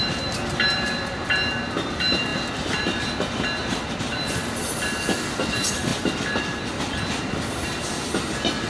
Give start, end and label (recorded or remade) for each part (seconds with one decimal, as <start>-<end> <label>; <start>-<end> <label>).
0.0-8.7 recorded